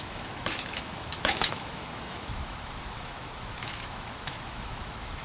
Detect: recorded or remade remade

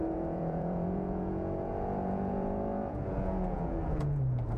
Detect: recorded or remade remade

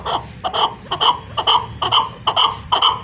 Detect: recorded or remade recorded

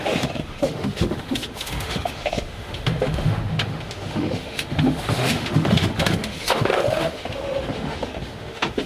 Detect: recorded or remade remade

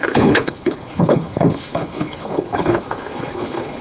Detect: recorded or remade remade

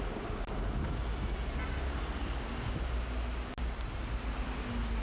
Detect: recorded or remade recorded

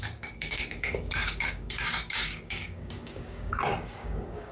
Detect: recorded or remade remade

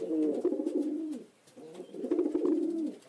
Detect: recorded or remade recorded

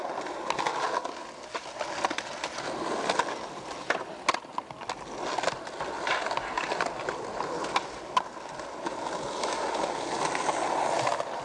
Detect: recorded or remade recorded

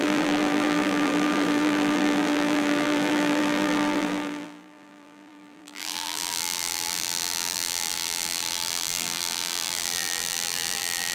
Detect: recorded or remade remade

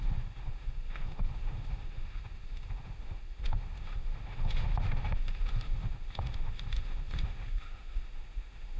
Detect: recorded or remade remade